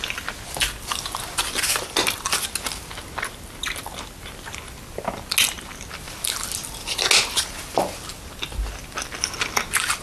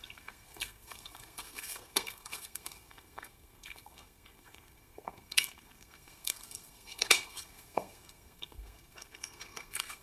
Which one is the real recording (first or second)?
first